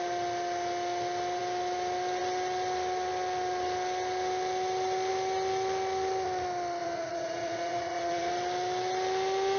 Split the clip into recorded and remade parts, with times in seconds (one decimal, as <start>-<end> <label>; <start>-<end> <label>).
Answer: 0.0-6.8 recorded; 6.8-8.3 remade; 8.3-9.6 recorded